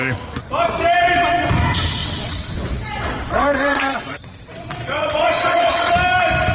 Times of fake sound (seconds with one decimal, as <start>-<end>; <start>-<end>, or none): 2.0-5.9